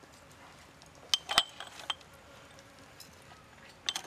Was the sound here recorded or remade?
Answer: recorded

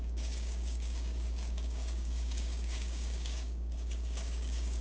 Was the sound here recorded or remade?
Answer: remade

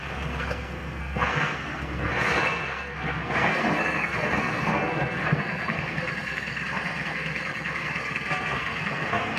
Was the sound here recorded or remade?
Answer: remade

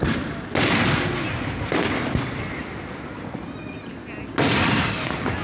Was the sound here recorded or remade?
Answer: recorded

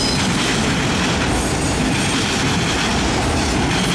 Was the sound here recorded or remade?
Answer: recorded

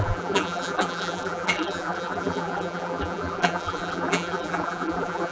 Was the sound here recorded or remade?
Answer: remade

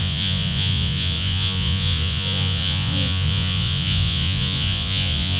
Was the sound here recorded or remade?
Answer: remade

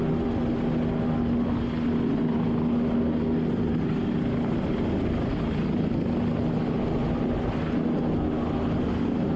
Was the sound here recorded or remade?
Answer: recorded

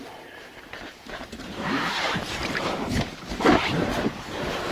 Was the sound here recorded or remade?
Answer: remade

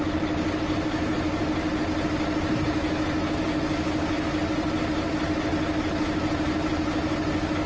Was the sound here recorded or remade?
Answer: recorded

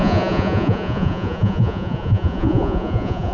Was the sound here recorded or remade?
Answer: remade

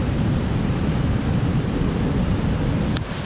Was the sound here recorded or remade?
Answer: remade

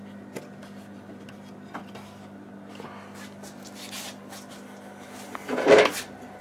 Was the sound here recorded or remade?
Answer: recorded